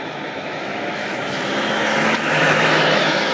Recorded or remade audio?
remade